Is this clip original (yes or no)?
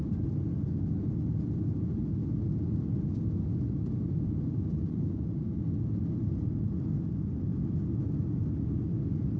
yes